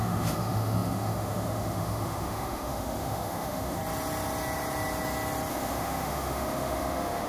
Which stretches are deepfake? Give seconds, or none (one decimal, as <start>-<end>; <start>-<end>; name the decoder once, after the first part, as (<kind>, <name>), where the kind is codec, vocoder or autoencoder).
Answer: 0.0-3.8 (autoencoder, DAC-VAE); 5.5-7.3